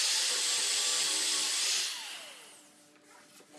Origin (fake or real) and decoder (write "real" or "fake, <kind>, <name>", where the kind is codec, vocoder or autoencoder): real